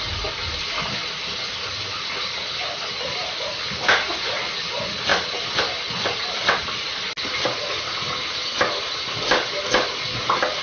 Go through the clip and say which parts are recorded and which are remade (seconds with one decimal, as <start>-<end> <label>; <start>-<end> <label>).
0.0-10.6 recorded

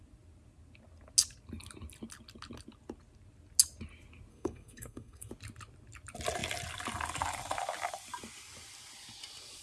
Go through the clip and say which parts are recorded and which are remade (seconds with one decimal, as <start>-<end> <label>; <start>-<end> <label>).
0.0-4.3 recorded; 4.3-5.3 remade; 5.3-9.6 recorded

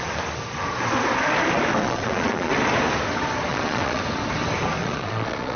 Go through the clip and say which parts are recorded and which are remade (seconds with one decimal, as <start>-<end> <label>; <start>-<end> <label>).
0.0-1.8 recorded; 1.8-2.5 remade; 2.5-3.5 recorded; 3.5-4.0 remade; 4.0-4.8 recorded; 4.8-5.6 remade

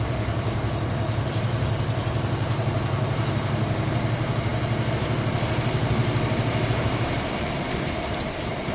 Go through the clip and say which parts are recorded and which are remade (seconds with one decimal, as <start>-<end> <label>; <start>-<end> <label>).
0.0-4.5 remade; 4.5-5.5 recorded; 5.5-6.0 remade; 6.0-6.7 recorded; 6.7-8.7 remade

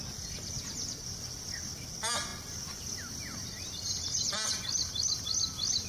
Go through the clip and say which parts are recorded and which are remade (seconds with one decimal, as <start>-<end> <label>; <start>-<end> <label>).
0.0-5.9 recorded

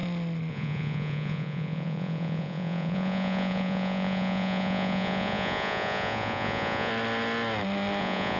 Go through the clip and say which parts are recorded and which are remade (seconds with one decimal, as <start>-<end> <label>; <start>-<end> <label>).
0.0-0.5 recorded; 0.5-6.9 remade; 6.9-8.0 recorded; 8.0-8.4 remade

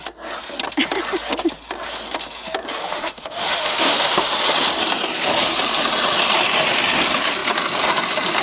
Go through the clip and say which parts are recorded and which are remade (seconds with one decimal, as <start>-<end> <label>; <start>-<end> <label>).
0.0-2.8 recorded; 2.8-4.3 remade; 4.3-8.4 recorded